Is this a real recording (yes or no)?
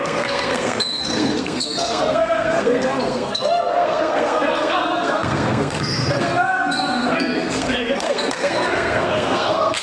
no